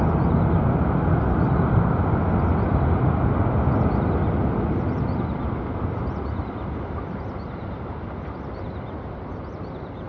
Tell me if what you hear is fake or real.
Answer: real